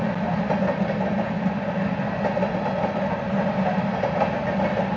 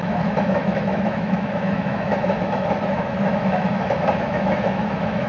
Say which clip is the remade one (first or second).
second